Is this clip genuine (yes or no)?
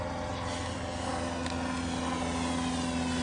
yes